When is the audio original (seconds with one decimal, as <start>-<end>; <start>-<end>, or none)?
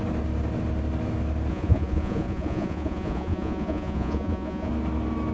0.0-1.5; 4.7-5.3